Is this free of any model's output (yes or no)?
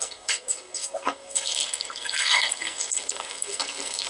no